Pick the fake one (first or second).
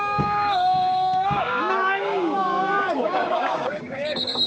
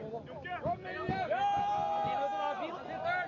first